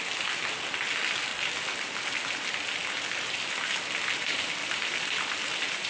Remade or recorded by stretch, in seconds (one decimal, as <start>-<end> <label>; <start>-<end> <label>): 0.0-5.9 recorded